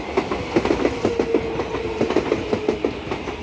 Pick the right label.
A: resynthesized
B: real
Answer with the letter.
B